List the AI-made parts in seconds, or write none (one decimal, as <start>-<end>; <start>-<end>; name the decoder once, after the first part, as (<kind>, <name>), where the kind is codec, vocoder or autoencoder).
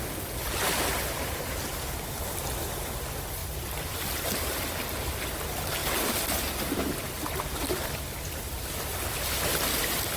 none